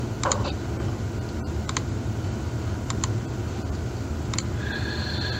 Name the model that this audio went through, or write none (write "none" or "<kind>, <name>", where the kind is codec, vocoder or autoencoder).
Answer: none